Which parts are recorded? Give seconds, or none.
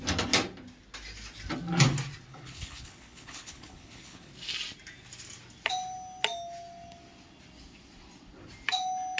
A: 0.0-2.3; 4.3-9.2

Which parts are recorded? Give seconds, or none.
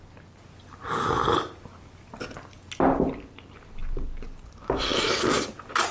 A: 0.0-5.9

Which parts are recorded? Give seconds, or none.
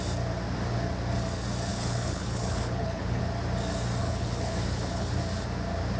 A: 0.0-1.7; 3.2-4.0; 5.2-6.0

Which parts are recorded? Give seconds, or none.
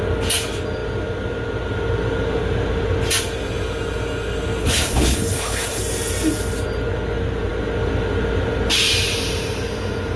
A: 0.0-4.6; 5.8-10.2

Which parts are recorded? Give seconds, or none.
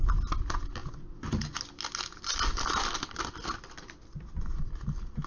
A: 0.0-5.3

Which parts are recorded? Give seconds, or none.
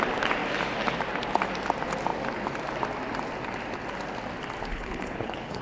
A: 0.0-4.6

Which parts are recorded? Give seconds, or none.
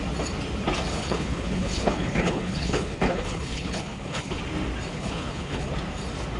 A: 0.0-0.9; 4.4-4.9; 5.7-6.4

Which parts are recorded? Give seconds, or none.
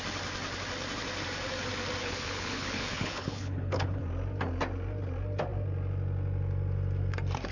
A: 0.0-2.0; 4.0-7.5